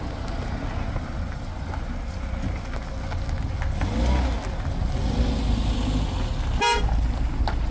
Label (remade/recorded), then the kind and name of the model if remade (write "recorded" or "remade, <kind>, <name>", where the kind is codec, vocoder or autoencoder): recorded